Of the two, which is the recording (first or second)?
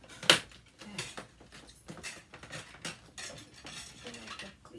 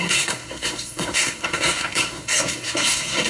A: first